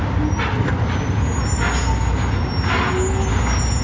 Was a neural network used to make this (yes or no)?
no